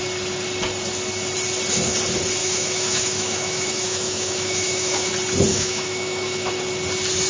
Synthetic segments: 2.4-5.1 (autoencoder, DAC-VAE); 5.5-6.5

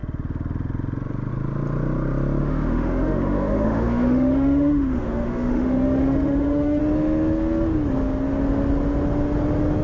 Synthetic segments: 2.4-6.8 (autoencoder, DAC-VAE)

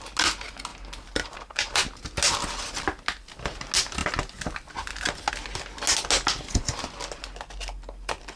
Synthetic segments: none